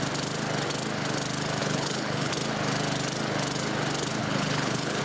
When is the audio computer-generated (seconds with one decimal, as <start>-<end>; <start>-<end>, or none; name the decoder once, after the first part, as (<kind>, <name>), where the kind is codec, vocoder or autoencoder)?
1.6-2.3 (codec, HILCodec); 4.2-5.0